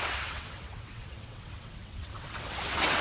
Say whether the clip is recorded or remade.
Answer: remade